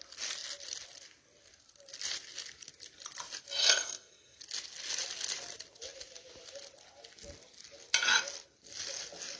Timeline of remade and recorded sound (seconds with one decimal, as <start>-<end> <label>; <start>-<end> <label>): 0.0-3.6 recorded; 3.6-4.4 remade; 4.4-9.4 recorded